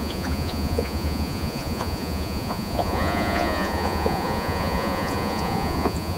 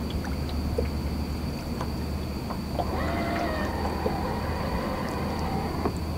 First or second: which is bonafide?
second